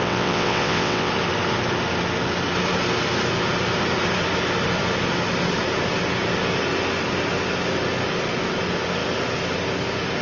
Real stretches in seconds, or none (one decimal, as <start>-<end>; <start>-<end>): 1.1-10.2